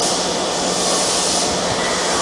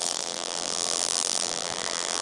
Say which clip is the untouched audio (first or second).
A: first